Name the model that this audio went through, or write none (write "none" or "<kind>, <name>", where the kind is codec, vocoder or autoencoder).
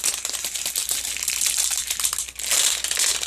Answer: none